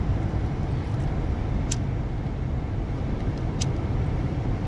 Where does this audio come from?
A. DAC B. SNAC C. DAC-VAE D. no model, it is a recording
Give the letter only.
D